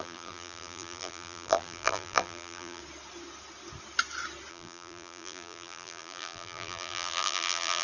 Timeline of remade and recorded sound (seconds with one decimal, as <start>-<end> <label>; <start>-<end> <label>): 0.0-2.8 remade; 2.8-4.5 recorded; 4.5-7.8 remade